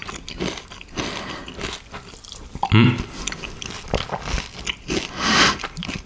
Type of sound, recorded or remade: recorded